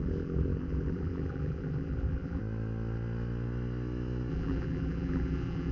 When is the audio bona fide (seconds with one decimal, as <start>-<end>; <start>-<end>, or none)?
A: 2.4-4.3